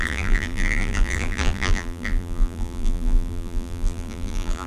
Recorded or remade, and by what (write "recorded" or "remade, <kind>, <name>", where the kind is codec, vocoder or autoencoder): remade, vocoder, BigVGAN v2